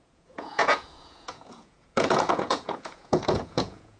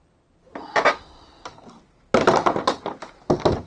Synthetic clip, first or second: first